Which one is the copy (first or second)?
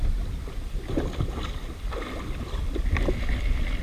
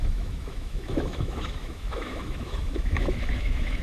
second